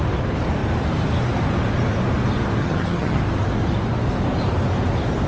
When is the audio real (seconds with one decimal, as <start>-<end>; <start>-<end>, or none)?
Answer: 0.0-2.6; 3.2-5.3